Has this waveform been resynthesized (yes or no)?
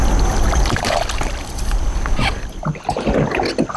no